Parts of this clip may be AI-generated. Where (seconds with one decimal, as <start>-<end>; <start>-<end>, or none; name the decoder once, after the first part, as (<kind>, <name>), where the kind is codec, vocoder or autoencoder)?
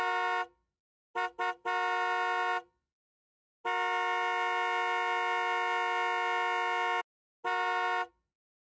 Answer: none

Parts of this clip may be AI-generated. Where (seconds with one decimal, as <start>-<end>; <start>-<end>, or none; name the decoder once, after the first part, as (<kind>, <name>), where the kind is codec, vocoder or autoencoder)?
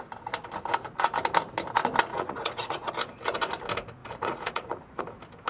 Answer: 2.1-2.9 (vocoder, Vocos); 4.0-5.0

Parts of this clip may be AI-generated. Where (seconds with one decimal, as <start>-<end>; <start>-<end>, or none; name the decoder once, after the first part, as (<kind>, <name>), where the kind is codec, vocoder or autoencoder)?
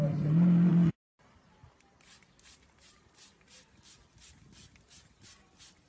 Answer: none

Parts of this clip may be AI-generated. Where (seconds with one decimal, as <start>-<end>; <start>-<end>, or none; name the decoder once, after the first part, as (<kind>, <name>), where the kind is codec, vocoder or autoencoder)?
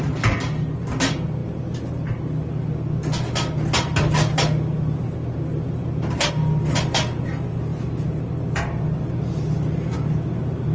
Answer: none